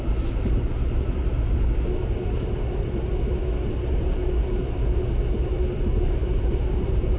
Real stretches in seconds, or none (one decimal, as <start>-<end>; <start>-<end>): 0.0-6.2